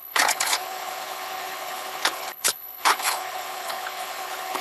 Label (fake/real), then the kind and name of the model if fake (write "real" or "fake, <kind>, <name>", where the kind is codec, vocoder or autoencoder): fake, codec, HILCodec